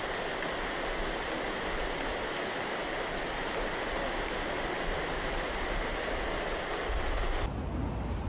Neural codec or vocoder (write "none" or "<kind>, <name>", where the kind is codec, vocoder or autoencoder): none